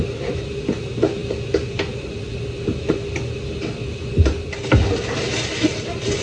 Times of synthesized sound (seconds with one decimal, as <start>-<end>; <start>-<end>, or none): none